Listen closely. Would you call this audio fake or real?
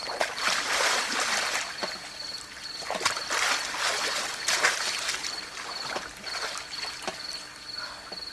real